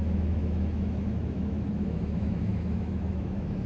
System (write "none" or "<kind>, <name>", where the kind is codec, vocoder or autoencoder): autoencoder, DAC-VAE